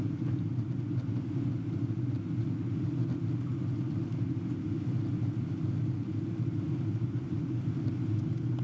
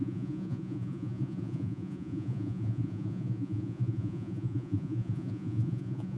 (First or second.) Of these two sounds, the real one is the first